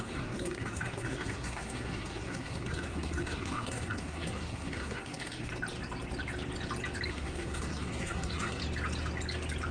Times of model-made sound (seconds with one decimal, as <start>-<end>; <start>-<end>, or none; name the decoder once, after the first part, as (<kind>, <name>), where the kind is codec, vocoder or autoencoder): 0.0-5.5 (codec, SNAC); 7.1-8.6